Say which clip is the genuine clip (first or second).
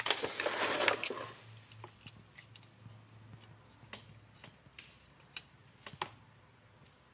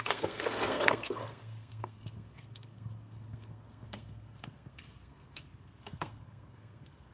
first